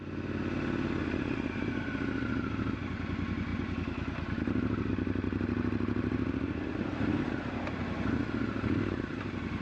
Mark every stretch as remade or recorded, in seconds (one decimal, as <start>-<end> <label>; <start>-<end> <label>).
0.0-9.6 recorded